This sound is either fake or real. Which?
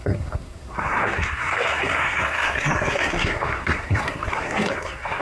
fake